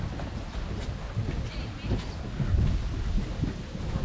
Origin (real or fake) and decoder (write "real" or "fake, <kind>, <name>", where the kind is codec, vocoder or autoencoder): real